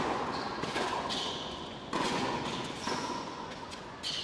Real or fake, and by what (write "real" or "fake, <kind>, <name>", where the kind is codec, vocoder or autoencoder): fake, vocoder, Vocos